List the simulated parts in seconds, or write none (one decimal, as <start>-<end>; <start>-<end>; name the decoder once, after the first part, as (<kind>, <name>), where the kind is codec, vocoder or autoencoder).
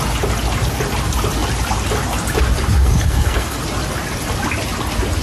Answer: 2.8-3.6 (codec, SNAC)